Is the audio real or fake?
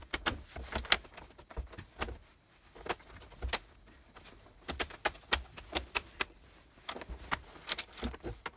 real